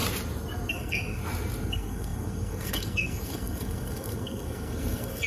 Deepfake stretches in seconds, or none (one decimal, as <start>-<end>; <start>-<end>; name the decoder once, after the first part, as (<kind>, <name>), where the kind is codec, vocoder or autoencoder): 0.7-1.2 (codec, SNAC); 1.7-5.3